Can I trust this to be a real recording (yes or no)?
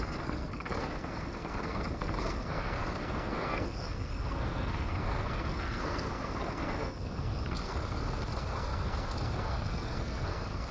no